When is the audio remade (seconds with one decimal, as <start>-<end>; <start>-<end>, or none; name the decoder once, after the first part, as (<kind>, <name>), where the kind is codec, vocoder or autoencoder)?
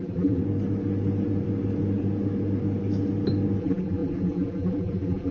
0.0-0.4 (vocoder, BigVGAN v2); 3.6-5.3